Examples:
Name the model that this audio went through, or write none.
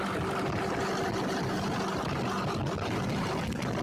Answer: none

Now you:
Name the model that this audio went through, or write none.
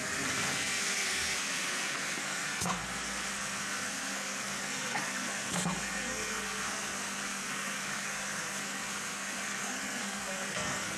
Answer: codec, SNAC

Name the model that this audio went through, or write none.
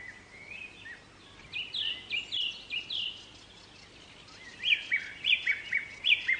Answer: none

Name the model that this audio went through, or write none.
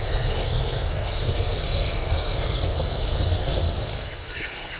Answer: codec, SNAC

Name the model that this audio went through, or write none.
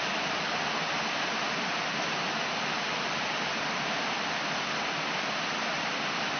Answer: none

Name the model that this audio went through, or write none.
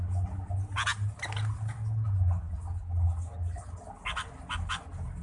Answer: none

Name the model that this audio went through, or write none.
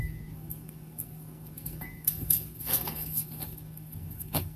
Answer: codec, SNAC